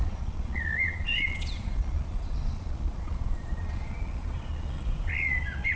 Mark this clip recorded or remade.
remade